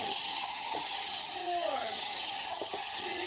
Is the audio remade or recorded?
remade